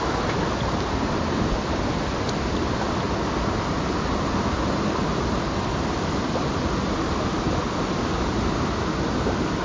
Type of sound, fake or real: real